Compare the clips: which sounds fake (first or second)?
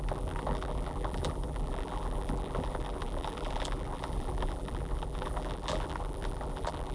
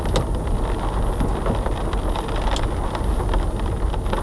first